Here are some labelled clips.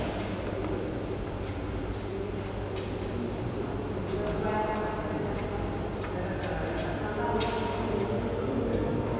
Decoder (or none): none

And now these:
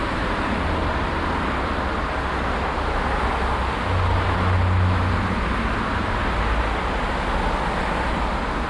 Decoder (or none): none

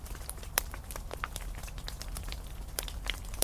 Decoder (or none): vocoder, BigVGAN v2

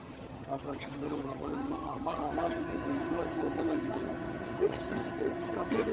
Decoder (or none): vocoder, HiFi-GAN